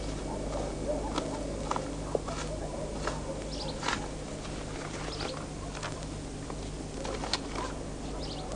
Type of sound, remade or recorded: recorded